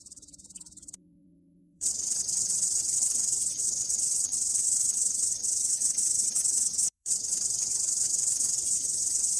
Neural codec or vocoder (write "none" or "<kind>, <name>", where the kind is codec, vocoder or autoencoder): vocoder, WaveNeXt